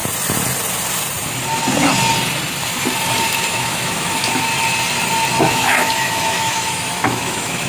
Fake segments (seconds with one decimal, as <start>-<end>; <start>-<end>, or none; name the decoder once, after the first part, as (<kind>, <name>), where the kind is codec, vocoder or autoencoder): 3.5-4.5 (autoencoder, DAC-VAE); 5.4-7.7